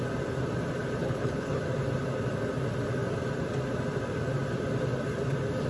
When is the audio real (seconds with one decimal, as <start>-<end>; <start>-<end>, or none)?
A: 0.0-1.0; 1.6-5.7